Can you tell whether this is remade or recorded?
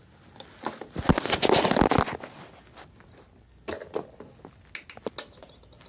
recorded